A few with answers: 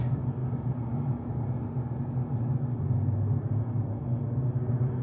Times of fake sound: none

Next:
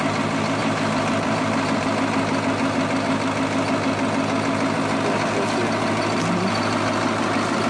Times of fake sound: 0.6-1.8 (vocoder, BigVGAN v2)

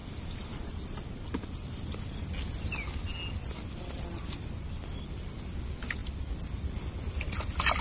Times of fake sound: none

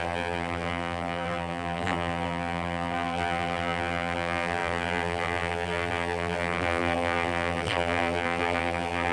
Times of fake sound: 0.0-9.1 (vocoder, BigVGAN v2)